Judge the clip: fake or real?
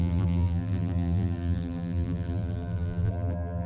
fake